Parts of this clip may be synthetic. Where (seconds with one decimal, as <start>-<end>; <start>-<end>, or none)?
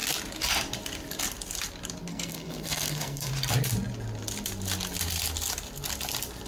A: 2.1-3.3